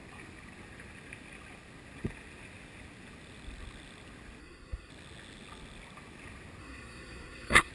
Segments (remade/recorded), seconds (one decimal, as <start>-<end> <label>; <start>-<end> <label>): 0.0-4.4 recorded; 4.4-4.9 remade; 4.9-6.6 recorded; 6.6-7.7 remade